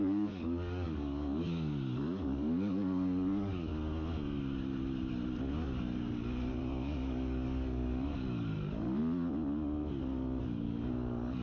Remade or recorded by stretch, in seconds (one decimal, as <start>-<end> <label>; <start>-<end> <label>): 0.0-3.7 remade; 3.7-6.6 recorded; 6.6-9.0 remade; 9.0-10.4 recorded; 10.4-11.4 remade